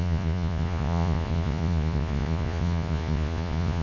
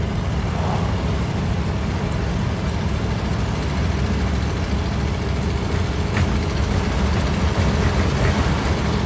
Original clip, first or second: second